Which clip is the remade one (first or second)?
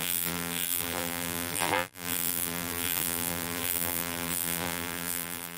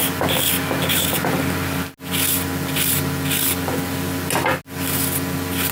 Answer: first